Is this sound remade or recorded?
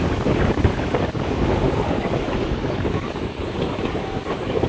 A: remade